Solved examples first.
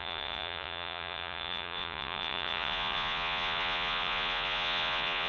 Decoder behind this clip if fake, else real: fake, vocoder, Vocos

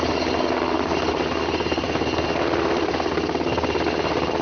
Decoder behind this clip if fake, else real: real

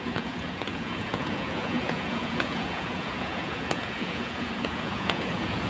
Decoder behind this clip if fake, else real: fake, vocoder, Vocos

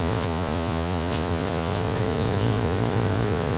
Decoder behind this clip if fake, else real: fake, vocoder, Vocos